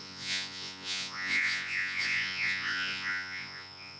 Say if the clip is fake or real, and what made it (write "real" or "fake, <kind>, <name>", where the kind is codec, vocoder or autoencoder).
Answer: fake, vocoder, Vocos